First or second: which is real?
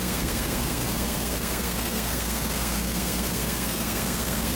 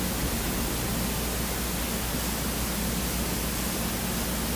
second